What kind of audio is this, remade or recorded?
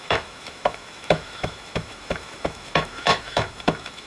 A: remade